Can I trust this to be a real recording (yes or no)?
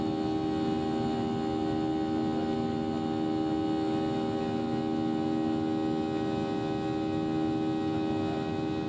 yes